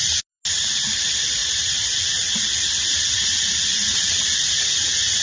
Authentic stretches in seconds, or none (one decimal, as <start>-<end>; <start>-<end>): 0.0-1.4; 4.5-5.2